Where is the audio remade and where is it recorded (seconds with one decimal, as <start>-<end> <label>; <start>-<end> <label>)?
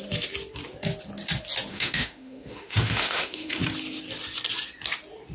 0.0-1.7 recorded; 1.7-3.6 remade; 3.6-5.3 recorded